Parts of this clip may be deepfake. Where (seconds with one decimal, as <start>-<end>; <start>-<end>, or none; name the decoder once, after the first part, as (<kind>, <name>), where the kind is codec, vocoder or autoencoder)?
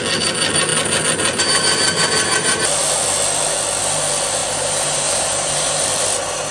4.4-5.8 (vocoder, BigVGAN v2)